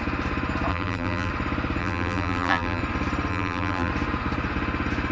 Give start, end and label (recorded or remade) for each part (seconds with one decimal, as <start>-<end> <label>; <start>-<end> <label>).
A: 0.0-0.7 recorded; 0.7-1.3 remade; 1.3-1.8 recorded; 1.8-2.8 remade; 2.8-3.3 recorded; 3.3-3.9 remade; 3.9-5.1 recorded